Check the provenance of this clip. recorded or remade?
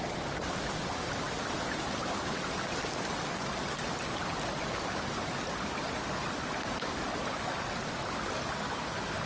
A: recorded